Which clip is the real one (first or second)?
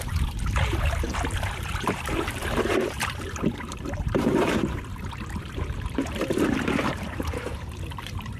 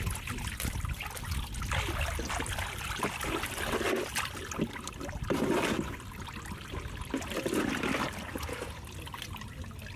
second